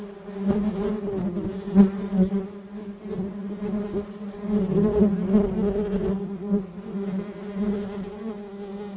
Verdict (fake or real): real